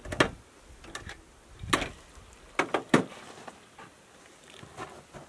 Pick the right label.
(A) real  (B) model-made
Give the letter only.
A